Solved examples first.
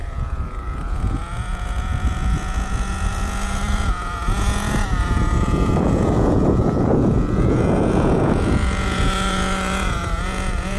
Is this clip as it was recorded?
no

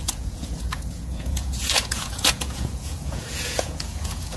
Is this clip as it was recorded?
no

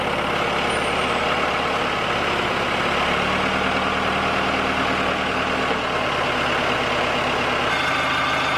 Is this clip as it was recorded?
yes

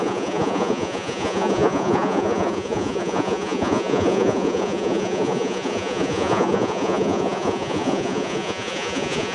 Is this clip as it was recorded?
no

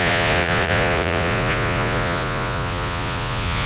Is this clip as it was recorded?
no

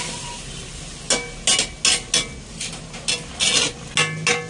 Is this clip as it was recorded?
yes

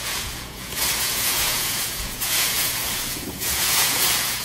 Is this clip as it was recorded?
no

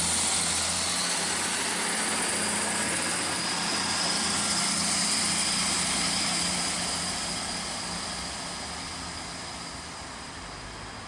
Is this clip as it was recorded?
yes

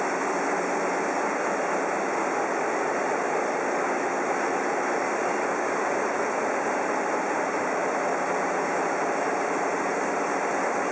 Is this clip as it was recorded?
yes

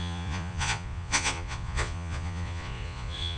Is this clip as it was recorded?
no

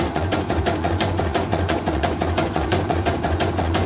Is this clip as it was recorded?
no